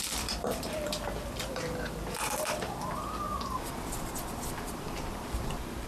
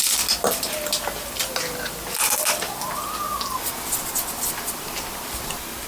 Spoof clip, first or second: first